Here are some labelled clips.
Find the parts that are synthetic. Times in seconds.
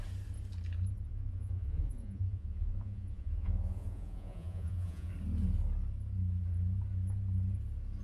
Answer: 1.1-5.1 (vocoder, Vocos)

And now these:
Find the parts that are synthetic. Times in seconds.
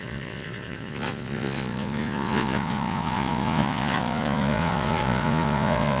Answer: 0.0-6.0 (vocoder, Vocos)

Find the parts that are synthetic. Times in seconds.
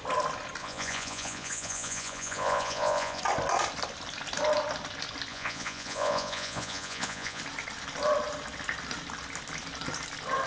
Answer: 0.6-3.2 (vocoder, Vocos); 5.3-7.4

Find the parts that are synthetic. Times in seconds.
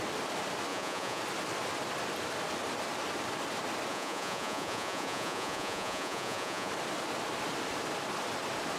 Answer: 0.7-1.2 (vocoder, Vocos); 3.9-6.7